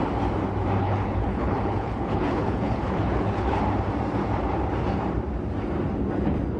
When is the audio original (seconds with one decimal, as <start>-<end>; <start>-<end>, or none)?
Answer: 0.0-0.8; 3.6-6.6